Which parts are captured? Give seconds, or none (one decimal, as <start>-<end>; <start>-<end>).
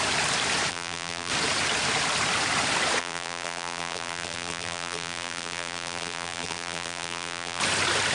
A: 0.0-0.7; 1.3-3.0; 7.6-8.1